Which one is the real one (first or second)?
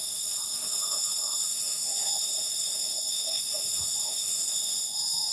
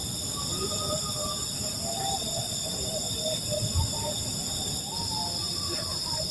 second